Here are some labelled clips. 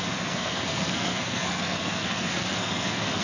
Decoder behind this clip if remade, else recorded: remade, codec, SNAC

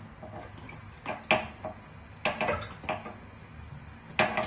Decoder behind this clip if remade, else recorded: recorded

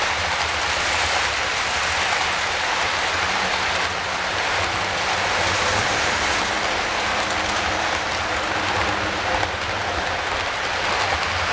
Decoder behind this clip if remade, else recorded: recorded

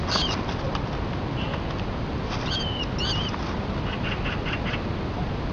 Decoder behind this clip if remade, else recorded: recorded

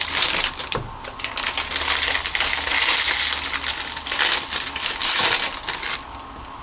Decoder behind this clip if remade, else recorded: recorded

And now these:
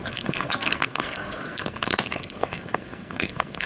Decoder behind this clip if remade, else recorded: remade, codec, SNAC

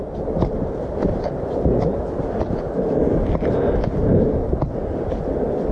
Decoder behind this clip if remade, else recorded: recorded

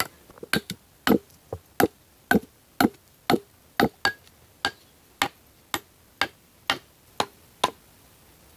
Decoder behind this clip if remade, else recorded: recorded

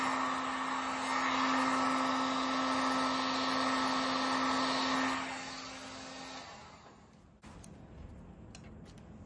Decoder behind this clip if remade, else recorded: recorded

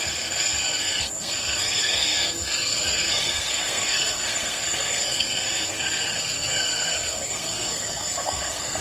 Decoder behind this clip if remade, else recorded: remade, codec, SNAC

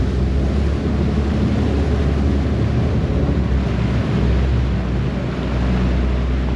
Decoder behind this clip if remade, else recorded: recorded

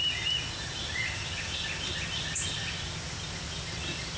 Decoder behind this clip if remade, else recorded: recorded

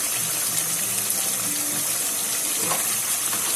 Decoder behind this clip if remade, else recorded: recorded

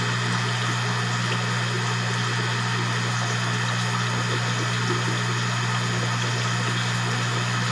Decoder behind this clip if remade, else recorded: recorded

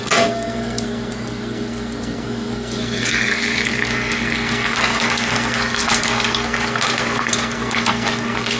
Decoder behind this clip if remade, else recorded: remade, codec, SNAC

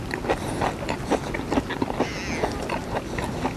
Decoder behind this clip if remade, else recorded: recorded